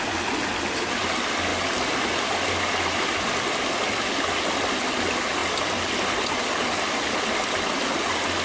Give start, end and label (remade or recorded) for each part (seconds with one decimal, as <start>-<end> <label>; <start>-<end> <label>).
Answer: 0.0-1.5 recorded; 1.5-2.1 remade; 2.1-8.4 recorded